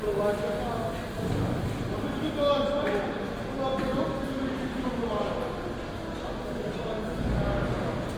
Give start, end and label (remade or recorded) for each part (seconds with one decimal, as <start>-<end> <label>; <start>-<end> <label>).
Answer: 0.0-8.2 recorded

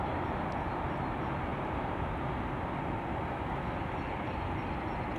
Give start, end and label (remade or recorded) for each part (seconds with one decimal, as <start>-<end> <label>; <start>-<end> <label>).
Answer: 0.0-5.2 recorded